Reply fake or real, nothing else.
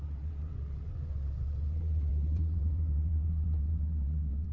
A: fake